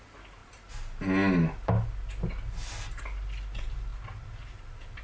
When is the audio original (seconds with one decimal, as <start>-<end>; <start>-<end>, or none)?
0.0-5.0